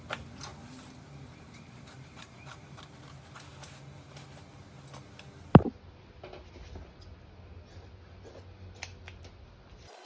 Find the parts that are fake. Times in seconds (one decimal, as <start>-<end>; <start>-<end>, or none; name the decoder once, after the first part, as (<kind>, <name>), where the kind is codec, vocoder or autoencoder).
0.5-3.1 (vocoder, BigVGAN v2)